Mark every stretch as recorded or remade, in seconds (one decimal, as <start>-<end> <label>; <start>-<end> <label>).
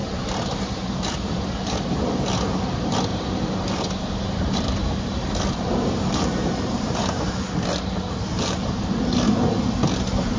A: 0.0-2.0 remade; 2.0-3.1 recorded; 3.1-7.2 remade; 7.2-8.3 recorded; 8.3-9.0 remade; 9.0-10.4 recorded